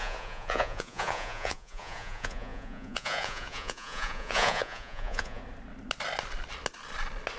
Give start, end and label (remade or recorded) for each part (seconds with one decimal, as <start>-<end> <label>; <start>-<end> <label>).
0.0-5.4 remade; 5.4-7.4 recorded